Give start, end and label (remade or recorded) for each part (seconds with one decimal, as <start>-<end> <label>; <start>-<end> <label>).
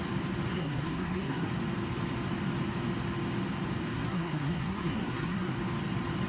0.0-0.5 recorded; 0.5-1.5 remade; 1.5-3.9 recorded; 3.9-5.5 remade; 5.5-6.3 recorded